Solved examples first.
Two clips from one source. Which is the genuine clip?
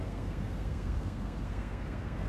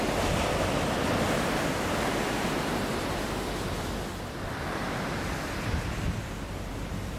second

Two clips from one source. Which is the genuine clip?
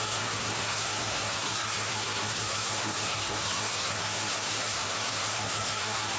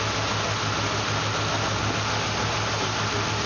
second